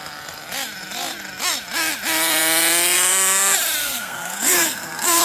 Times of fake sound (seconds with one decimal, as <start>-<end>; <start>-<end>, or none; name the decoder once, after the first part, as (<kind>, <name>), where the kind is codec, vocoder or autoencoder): 3.8-5.2 (codec, SNAC)